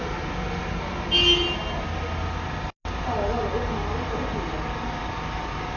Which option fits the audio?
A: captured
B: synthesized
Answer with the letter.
A